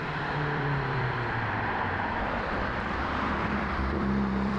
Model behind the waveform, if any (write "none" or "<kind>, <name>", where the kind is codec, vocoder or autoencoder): vocoder, BigVGAN v2